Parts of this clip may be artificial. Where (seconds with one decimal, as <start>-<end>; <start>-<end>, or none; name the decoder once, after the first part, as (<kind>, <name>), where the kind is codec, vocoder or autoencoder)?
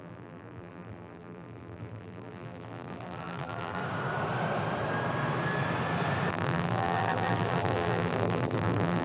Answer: 0.0-3.8 (vocoder, BigVGAN v2); 6.3-9.0